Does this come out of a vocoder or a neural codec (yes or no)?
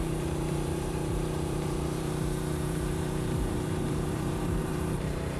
yes